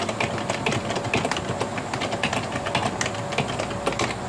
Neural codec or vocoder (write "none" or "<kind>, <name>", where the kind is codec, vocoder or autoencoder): none